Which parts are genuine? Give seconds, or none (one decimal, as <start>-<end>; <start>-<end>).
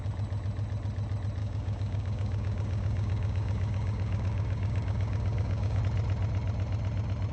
0.0-1.4; 5.8-7.3